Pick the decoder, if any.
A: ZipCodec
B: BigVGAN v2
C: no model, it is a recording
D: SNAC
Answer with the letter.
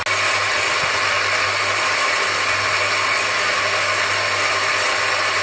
C